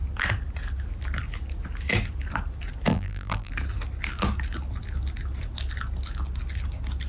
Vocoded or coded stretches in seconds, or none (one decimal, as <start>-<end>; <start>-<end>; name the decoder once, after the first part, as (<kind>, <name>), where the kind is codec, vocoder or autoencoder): 2.9-3.5 (vocoder, BigVGAN v2)